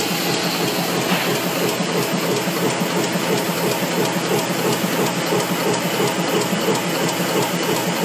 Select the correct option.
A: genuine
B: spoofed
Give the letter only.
A